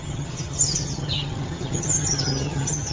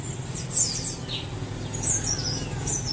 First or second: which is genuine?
second